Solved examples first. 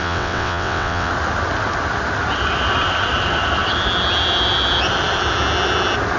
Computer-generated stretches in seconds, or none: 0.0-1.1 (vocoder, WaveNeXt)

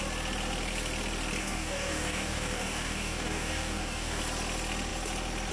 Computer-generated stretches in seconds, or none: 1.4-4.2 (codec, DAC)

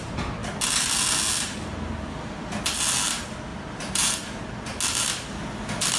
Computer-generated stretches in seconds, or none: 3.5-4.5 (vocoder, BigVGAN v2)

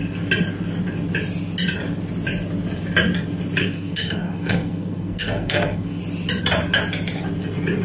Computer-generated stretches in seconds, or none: 3.6-6.0 (codec, SNAC)